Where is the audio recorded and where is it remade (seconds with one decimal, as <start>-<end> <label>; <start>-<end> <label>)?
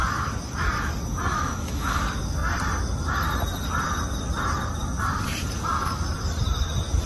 0.0-1.3 recorded; 1.3-2.0 remade; 2.0-7.1 recorded